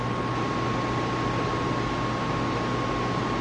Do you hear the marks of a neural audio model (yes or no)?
no